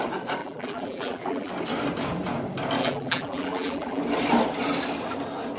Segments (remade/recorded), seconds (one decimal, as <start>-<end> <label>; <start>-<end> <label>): 0.0-0.4 recorded; 0.4-1.5 remade; 1.5-2.8 recorded; 2.8-4.0 remade; 4.0-5.6 recorded